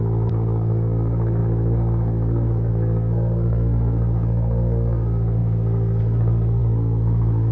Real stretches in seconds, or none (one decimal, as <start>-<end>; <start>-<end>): none